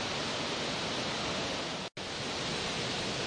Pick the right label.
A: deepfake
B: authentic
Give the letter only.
B